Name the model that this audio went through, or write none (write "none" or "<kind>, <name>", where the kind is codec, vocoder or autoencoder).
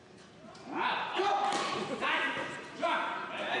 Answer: none